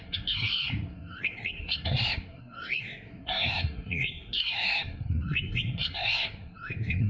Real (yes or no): no